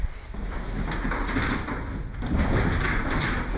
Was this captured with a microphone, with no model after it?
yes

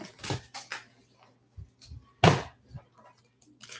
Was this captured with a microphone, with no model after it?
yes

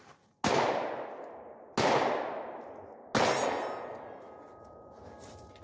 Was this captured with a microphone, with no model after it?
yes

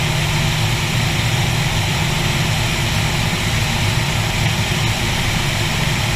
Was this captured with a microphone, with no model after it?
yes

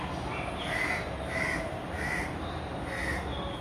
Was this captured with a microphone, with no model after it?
yes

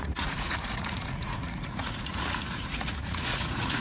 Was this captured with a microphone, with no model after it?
no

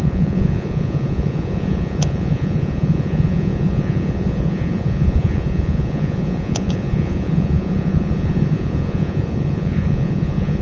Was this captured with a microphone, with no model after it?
no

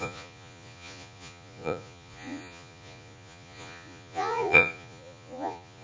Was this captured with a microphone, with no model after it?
no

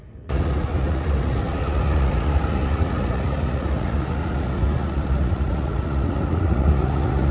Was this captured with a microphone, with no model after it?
no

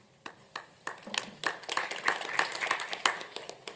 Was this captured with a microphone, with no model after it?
yes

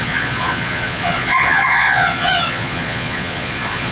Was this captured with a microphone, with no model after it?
no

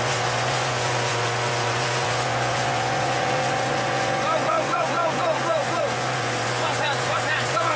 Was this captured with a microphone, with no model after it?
no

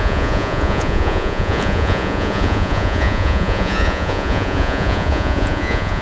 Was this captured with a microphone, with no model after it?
no